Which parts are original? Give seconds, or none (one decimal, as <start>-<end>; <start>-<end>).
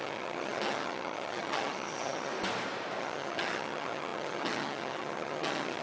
2.3-3.0